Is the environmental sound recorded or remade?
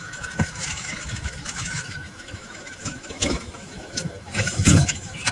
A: remade